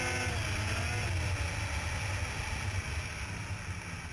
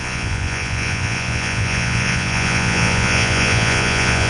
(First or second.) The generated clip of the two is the second